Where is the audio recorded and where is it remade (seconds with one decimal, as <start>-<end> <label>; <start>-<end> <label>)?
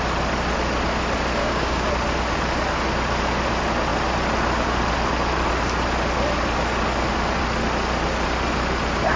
0.0-1.4 recorded; 1.4-1.9 remade; 1.9-9.2 recorded